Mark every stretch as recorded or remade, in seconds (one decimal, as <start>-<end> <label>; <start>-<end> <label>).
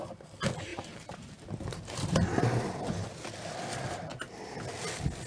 0.0-0.7 recorded; 0.7-3.1 remade; 3.1-4.1 recorded; 4.1-4.6 remade; 4.6-5.3 recorded